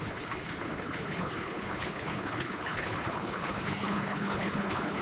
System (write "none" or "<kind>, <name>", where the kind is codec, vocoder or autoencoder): codec, HILCodec